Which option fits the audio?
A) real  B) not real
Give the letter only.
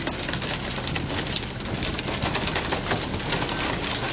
A